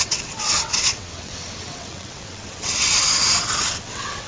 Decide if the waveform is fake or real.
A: fake